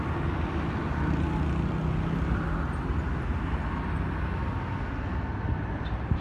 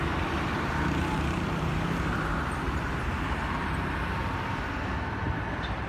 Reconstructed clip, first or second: second